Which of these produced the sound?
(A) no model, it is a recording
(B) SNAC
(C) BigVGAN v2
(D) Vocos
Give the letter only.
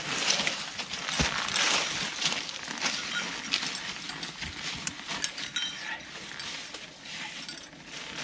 A